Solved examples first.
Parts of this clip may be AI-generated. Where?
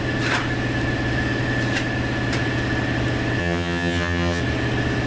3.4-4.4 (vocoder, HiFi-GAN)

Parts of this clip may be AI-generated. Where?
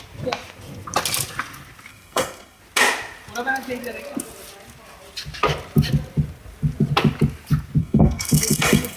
1.9-2.6 (codec, SNAC); 7.8-9.0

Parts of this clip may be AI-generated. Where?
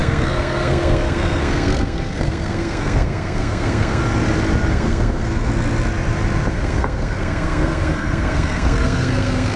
0.0-4.0 (codec, SNAC); 4.7-5.5; 6.5-9.6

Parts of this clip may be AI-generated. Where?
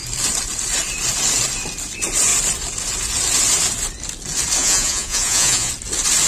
4.6-5.7 (vocoder, Vocos)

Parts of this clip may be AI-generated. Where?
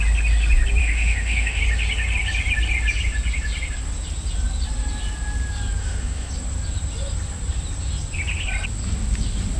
0.8-1.6 (autoencoder, DAC-VAE); 5.8-6.3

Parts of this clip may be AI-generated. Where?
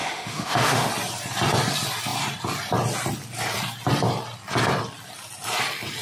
0.0-0.9 (autoencoder, DAC-VAE)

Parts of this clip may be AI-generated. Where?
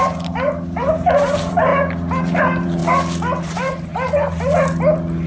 0.0-1.7 (vocoder, BigVGAN v2); 2.2-2.8; 3.4-3.9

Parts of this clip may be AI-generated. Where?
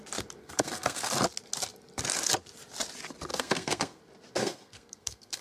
0.4-1.1 (codec, SNAC); 3.3-4.0; 4.4-5.4